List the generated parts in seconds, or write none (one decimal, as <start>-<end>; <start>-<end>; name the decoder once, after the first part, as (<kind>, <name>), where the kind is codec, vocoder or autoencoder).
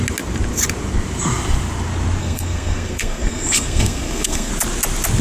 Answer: 2.2-4.5 (codec, SNAC)